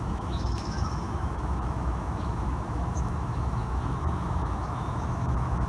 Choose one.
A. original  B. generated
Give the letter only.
B